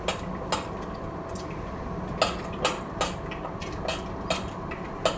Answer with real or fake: real